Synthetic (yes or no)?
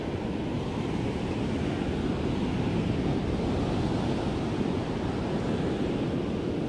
no